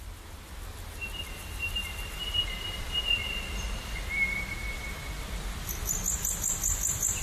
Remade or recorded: remade